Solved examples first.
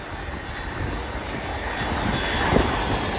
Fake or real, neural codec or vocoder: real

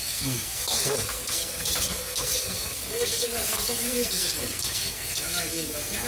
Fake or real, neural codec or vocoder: fake, codec, SNAC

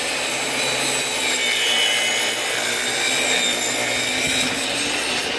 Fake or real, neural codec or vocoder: real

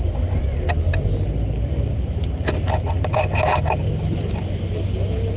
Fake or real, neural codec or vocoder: real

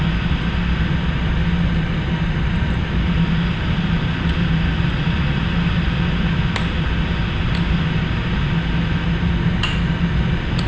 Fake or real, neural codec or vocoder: real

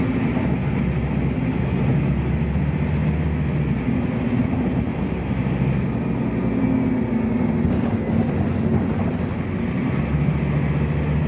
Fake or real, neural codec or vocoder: real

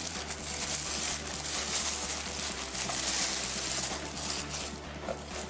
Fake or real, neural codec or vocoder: real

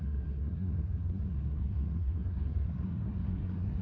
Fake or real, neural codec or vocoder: fake, codec, SNAC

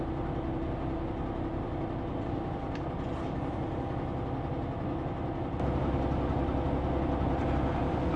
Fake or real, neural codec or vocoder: real